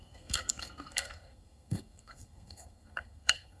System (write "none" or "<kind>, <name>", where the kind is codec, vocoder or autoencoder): codec, SNAC